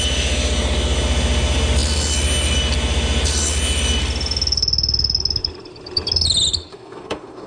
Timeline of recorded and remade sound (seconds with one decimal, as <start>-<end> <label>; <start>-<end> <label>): 0.0-6.7 recorded; 6.7-7.5 remade